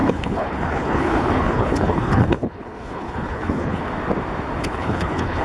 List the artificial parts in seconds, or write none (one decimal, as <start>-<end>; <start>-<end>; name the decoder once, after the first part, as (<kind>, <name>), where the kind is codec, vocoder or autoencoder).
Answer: 0.0-3.8 (codec, HILCodec); 4.6-5.4